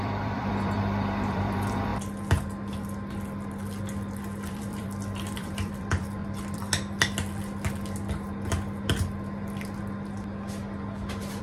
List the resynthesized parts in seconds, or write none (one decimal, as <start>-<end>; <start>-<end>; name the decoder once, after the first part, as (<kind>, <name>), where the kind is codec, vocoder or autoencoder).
0.0-1.9 (vocoder, BigVGAN v2); 4.5-6.2